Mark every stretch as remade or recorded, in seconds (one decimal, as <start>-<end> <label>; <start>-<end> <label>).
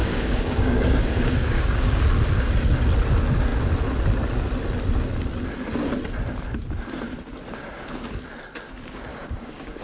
0.0-2.0 remade; 2.0-9.1 recorded; 9.1-9.8 remade